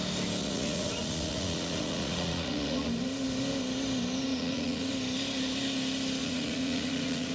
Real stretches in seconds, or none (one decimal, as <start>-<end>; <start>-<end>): 0.0-0.4; 2.9-4.3; 4.9-6.2